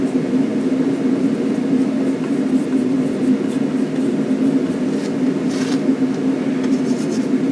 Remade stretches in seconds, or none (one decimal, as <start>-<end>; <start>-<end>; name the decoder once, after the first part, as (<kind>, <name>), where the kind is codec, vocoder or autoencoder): none